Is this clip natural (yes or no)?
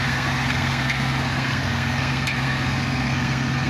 no